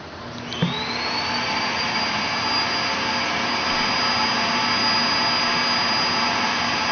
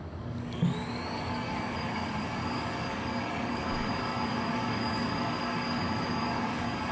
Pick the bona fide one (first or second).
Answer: first